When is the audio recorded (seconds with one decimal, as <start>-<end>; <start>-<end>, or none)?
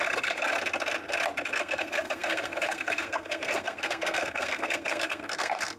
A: 0.5-1.5